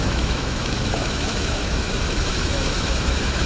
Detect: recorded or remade remade